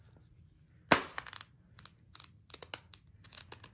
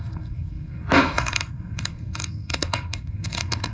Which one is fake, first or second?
second